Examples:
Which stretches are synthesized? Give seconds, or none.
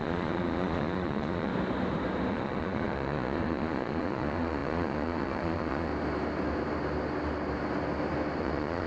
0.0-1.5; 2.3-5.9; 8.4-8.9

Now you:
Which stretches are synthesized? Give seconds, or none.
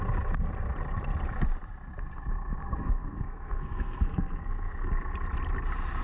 2.6-4.9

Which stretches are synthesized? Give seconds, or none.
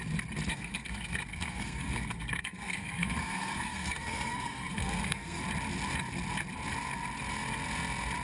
0.5-5.4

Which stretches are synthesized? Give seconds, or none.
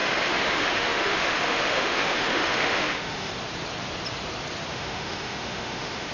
0.0-3.3; 4.7-6.1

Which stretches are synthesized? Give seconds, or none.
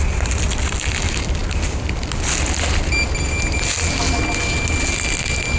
none